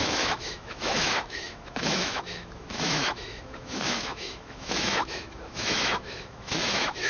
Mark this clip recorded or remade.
remade